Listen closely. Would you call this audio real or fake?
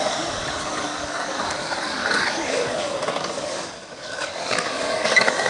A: fake